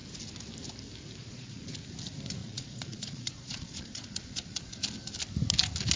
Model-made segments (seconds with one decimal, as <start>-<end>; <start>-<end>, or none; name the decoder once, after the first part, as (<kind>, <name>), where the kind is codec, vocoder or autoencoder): 1.2-1.8 (vocoder, Vocos); 2.4-4.8